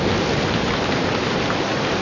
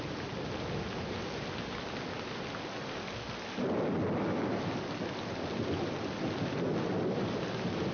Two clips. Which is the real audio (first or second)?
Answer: second